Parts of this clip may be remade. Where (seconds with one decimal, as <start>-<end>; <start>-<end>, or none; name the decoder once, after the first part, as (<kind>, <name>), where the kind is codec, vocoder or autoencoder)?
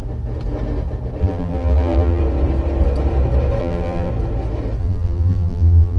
1.2-2.2 (vocoder, BigVGAN v2); 3.6-4.1; 4.8-6.0